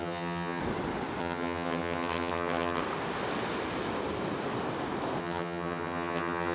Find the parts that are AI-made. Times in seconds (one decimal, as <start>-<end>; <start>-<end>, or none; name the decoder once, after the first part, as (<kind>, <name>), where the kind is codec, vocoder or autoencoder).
0.0-0.6 (vocoder, HiFi-GAN); 1.2-2.8; 5.2-6.5

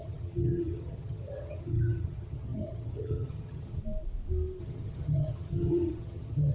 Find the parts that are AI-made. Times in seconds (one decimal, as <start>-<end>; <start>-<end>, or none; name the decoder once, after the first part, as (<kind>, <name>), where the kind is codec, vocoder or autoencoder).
0.0-3.8 (vocoder, HiFi-GAN); 4.6-6.5

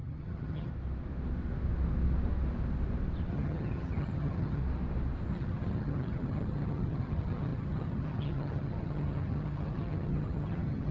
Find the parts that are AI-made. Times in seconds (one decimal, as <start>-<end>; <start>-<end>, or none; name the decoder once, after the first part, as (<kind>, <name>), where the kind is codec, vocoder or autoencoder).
0.0-0.7 (vocoder, HiFi-GAN); 3.3-4.6; 5.3-10.9

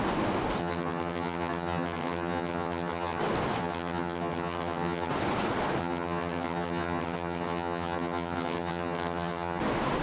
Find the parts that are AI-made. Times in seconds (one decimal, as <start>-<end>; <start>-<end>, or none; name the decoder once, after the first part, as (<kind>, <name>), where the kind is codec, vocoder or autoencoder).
0.6-3.2 (vocoder, HiFi-GAN); 3.6-5.1; 5.8-9.6

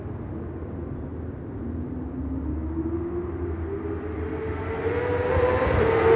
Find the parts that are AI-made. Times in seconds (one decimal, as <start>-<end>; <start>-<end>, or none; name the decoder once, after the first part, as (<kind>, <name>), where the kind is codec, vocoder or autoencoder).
none